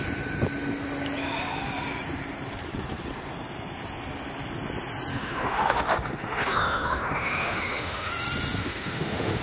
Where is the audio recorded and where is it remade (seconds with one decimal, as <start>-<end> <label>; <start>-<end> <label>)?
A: 0.0-5.1 recorded; 5.1-8.1 remade; 8.1-8.6 recorded; 8.6-9.4 remade

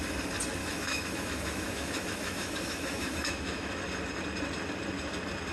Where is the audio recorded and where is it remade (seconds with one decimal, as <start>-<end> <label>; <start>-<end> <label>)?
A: 0.0-0.6 recorded; 0.6-3.8 remade; 3.8-5.5 recorded

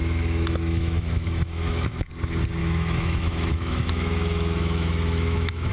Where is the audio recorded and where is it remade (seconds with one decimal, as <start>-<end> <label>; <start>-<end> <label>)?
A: 0.0-2.1 remade; 2.1-2.6 recorded; 2.6-5.7 remade

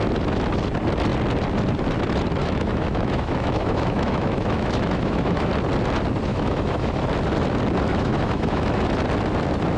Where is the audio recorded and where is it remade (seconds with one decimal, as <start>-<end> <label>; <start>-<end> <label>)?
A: 0.0-2.4 recorded; 2.4-5.5 remade; 5.5-6.3 recorded; 6.3-7.0 remade; 7.0-7.9 recorded; 7.9-8.8 remade; 8.8-9.8 recorded